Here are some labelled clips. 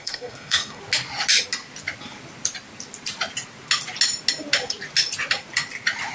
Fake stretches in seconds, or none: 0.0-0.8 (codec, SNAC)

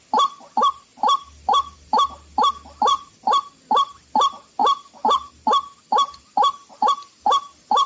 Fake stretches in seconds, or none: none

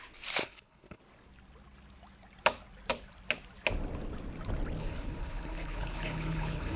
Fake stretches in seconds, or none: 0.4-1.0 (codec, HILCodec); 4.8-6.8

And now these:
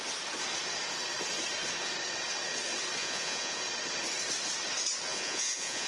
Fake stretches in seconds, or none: 3.0-3.6 (vocoder, Vocos); 5.1-5.9